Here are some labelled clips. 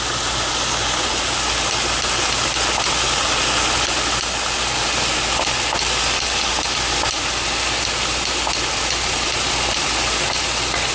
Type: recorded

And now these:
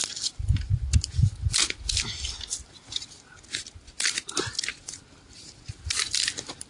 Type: recorded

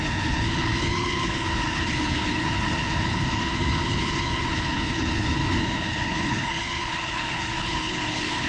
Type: remade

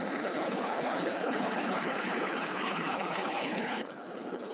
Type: remade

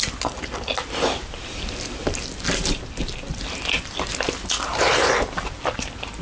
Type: recorded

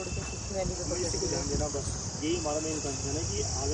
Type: recorded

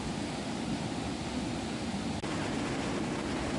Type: recorded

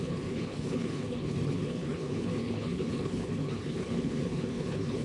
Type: remade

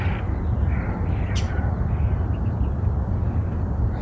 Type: recorded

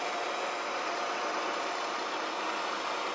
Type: recorded